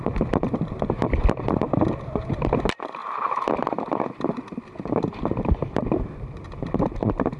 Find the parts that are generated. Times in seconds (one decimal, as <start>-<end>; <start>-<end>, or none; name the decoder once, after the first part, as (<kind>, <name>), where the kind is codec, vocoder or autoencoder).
5.6-6.5 (vocoder, BigVGAN v2)